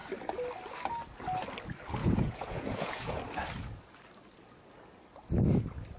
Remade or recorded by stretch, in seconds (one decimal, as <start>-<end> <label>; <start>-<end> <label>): 0.0-2.0 recorded; 2.0-3.2 remade; 3.2-6.0 recorded